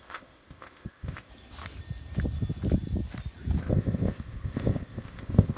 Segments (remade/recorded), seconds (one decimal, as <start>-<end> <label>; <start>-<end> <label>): 0.0-1.3 remade; 1.3-3.6 recorded; 3.6-5.6 remade